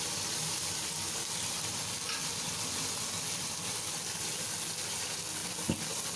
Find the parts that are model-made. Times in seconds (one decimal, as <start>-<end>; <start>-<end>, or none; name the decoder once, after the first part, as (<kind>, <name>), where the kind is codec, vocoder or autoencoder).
none